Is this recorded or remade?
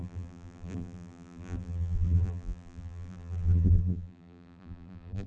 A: remade